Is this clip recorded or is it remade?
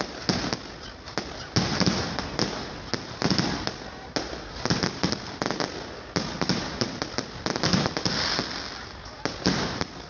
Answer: recorded